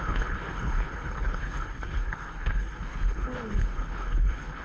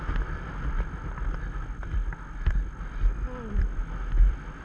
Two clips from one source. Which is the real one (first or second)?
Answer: second